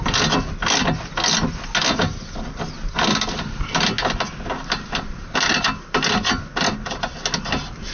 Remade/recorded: recorded